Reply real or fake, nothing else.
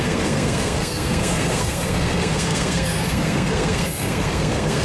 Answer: fake